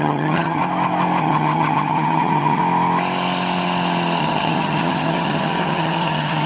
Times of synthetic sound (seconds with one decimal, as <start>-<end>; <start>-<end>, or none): 0.0-0.6; 1.2-2.6; 4.2-6.5

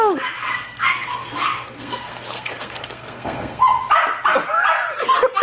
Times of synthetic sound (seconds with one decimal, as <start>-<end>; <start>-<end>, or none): 0.4-3.6

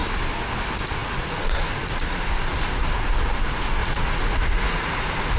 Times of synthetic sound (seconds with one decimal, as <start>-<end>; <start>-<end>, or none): 1.0-2.2; 3.8-5.4

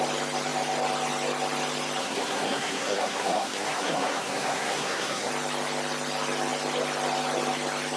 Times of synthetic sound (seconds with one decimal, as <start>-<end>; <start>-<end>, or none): 2.0-5.3